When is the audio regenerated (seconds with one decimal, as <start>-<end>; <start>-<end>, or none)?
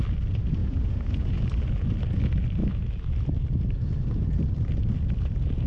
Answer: 0.6-1.4